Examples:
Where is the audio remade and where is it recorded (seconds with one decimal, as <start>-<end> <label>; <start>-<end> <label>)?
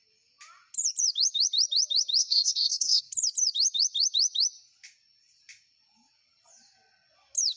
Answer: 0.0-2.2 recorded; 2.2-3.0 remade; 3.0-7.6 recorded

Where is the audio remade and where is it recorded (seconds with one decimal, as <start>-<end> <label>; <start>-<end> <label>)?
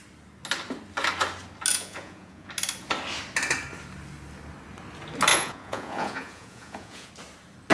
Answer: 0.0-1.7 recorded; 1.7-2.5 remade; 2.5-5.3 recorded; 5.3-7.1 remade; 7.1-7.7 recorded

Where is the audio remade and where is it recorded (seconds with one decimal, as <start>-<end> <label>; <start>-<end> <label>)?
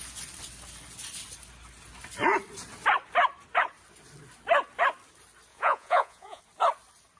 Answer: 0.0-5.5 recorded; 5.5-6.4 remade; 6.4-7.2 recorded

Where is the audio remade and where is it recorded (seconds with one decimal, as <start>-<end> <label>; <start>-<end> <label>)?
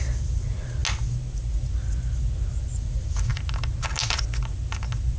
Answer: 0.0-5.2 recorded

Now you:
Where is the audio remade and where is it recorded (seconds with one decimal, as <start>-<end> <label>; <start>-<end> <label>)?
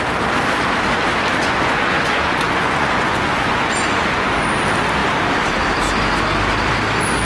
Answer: 0.0-1.4 recorded; 1.4-4.4 remade; 4.4-7.2 recorded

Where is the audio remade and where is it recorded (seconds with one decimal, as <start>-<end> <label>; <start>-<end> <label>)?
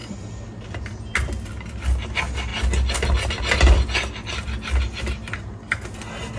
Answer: 0.0-6.4 recorded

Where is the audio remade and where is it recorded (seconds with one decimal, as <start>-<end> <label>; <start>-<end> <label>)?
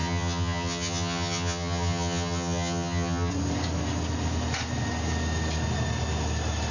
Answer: 0.0-3.3 remade; 3.3-6.7 recorded